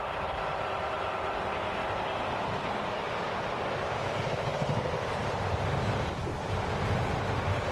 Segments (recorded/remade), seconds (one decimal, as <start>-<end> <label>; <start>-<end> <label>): 0.0-7.7 recorded